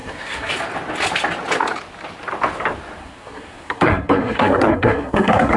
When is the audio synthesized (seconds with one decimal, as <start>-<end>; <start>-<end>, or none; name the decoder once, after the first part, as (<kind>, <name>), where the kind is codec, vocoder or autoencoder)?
0.0-0.5 (codec, SNAC); 3.0-5.6